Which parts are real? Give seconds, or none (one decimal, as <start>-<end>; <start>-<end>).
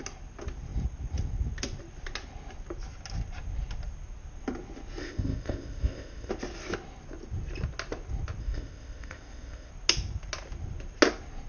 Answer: 0.0-5.0; 6.3-8.4; 9.7-11.5